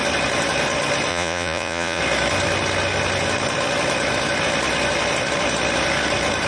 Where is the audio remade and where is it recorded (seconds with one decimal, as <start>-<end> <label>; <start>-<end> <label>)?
0.0-1.1 recorded; 1.1-2.0 remade; 2.0-6.5 recorded

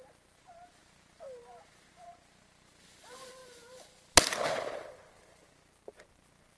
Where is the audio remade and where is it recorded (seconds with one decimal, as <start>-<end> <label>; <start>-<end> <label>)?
0.0-6.6 recorded